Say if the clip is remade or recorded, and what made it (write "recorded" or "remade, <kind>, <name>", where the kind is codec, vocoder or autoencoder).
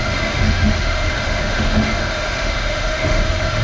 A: remade, autoencoder, DAC-VAE